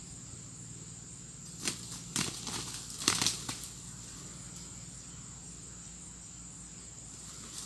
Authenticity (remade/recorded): recorded